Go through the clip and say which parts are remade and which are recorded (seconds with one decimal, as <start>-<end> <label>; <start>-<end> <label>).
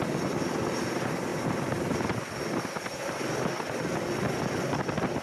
0.0-5.2 recorded